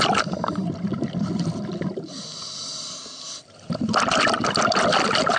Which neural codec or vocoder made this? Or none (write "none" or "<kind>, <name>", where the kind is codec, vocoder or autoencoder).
none